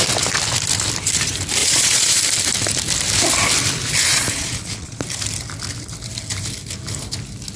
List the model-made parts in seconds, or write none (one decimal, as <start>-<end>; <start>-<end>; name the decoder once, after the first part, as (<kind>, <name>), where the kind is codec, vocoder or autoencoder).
1.6-2.2 (vocoder, Vocos); 4.1-5.0